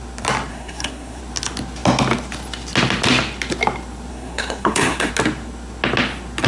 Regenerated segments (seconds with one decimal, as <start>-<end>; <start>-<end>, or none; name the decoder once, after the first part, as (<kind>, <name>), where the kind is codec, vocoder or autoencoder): 0.5-1.2 (codec, SNAC); 4.1-5.1